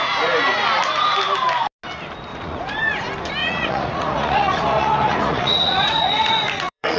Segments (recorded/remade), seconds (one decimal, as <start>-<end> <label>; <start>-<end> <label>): 0.0-2.3 recorded; 2.3-2.9 remade; 2.9-3.4 recorded; 3.4-7.0 remade